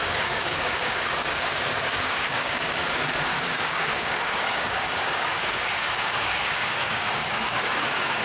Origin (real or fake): fake